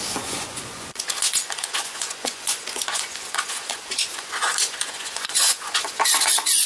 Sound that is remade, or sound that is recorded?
remade